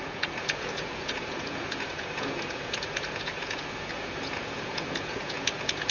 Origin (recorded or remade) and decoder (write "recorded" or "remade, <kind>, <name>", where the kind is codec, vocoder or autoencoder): remade, vocoder, Vocos